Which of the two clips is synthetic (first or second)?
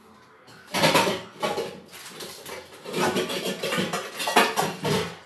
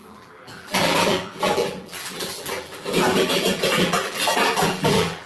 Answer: second